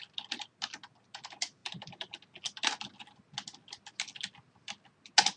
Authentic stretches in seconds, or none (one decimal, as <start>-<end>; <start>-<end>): 0.0-5.4